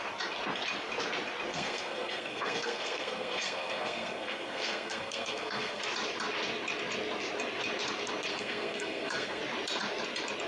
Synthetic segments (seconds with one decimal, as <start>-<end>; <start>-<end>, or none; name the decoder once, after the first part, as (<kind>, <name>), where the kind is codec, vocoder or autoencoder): 1.5-5.8 (codec, SNAC); 8.3-9.4